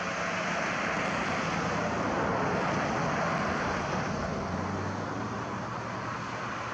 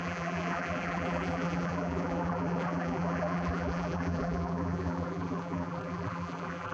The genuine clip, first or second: first